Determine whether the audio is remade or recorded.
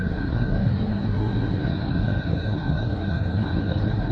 remade